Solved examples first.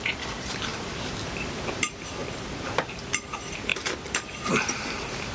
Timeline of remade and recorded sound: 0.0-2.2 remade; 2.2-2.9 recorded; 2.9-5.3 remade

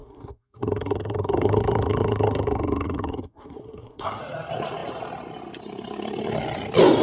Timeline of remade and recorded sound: 0.0-4.2 remade; 4.2-7.0 recorded

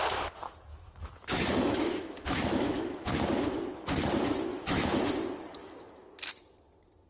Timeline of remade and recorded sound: 0.0-0.7 recorded; 0.7-3.1 remade; 3.1-4.5 recorded; 4.5-5.1 remade; 5.1-5.6 recorded; 5.6-6.3 remade; 6.3-7.1 recorded

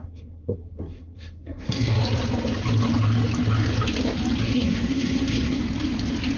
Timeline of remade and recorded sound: 0.0-2.0 remade; 2.0-4.4 recorded; 4.4-5.6 remade; 5.6-6.4 recorded

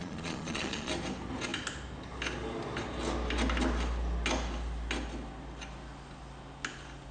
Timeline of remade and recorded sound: 0.0-0.9 remade; 0.9-7.1 recorded

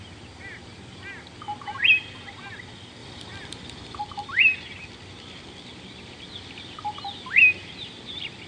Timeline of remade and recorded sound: 0.0-8.5 recorded